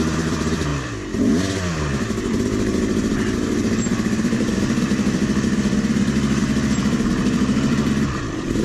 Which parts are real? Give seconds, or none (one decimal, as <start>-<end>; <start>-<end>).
0.7-2.0